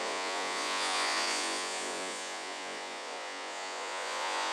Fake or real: fake